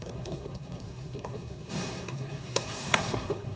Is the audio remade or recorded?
remade